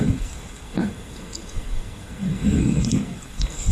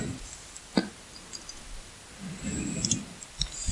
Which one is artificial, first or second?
first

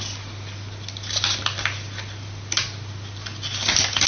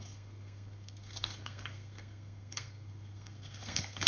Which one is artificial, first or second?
second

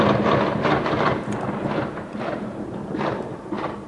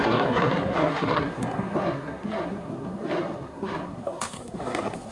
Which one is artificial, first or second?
second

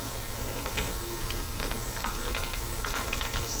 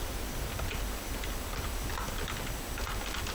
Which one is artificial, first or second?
first